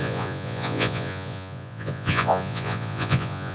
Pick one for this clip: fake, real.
fake